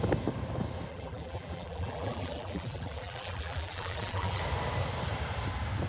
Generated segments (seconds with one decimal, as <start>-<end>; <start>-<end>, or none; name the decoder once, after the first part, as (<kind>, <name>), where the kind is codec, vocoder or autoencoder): 0.9-4.4 (vocoder, BigVGAN v2)